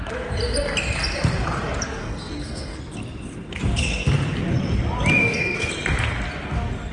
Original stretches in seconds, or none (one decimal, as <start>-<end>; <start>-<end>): 0.0-2.0; 2.8-5.2; 5.7-6.9